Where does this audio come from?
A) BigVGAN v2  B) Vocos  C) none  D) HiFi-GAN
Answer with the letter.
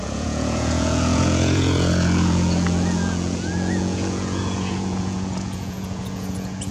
B